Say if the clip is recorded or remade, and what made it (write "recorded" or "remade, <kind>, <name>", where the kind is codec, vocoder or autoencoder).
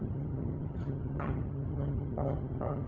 remade, vocoder, HiFi-GAN